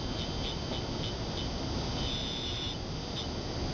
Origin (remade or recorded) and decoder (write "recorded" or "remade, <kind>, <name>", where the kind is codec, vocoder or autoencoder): recorded